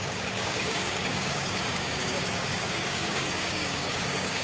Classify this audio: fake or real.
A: fake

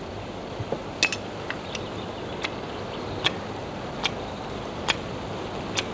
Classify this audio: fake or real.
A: real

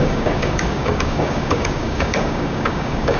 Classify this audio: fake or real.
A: fake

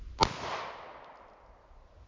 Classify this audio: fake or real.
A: real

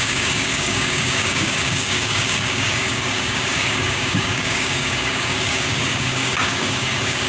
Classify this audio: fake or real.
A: fake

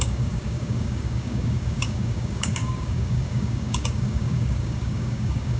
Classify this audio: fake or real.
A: fake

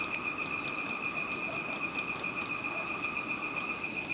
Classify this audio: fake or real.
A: real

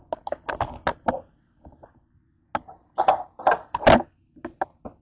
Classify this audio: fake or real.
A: real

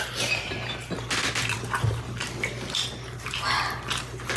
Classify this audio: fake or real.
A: real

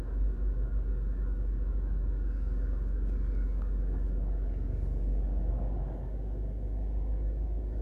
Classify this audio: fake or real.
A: fake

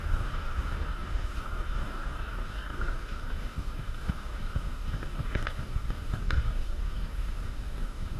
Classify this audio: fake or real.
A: fake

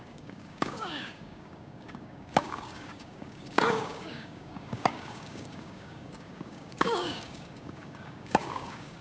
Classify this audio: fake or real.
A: fake